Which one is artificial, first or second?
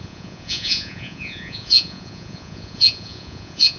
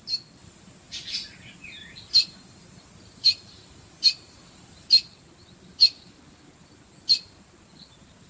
first